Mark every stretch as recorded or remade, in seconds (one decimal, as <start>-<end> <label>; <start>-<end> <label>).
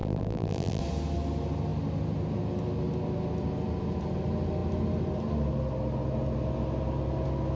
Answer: 0.0-0.8 remade; 0.8-7.6 recorded